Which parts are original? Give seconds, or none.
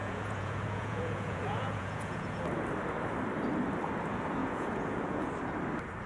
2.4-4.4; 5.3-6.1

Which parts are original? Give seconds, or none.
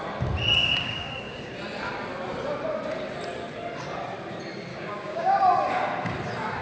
0.0-0.6; 1.5-4.7; 5.4-6.6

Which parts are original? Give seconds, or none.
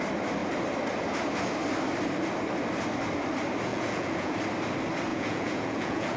0.0-3.7; 4.3-5.1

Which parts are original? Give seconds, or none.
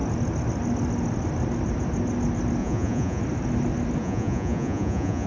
0.0-2.6; 3.2-4.0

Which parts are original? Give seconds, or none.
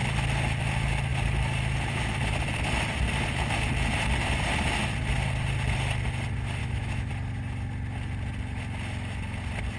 0.0-6.6; 7.1-9.8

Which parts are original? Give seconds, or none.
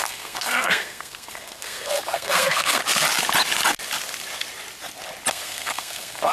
2.8-5.3